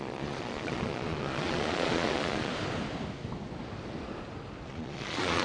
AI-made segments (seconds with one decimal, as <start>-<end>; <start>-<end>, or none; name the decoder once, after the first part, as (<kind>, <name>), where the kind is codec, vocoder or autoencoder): 0.0-2.5 (vocoder, Vocos); 4.7-5.4